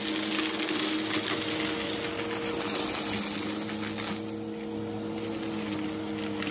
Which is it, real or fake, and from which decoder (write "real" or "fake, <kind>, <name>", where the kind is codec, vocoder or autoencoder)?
real